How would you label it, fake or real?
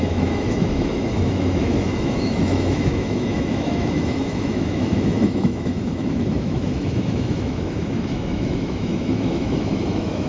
fake